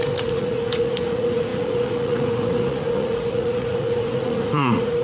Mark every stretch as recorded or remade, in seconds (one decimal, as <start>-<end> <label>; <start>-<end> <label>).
0.0-5.0 remade